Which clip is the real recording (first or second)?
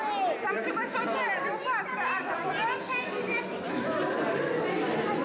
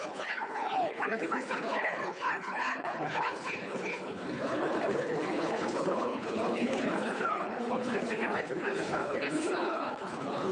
first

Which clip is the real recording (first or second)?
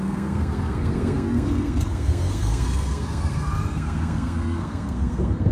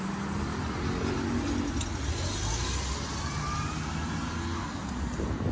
second